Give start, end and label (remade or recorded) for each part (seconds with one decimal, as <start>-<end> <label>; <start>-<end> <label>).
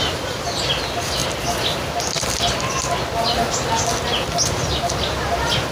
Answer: 0.0-5.7 recorded